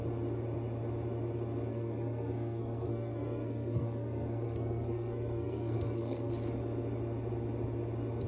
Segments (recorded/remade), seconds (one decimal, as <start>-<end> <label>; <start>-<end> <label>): 0.0-1.7 recorded; 1.7-6.3 remade; 6.3-8.3 recorded